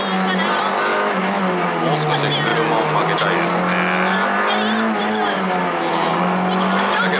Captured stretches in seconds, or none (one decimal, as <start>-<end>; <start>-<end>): 0.0-0.9; 1.4-7.2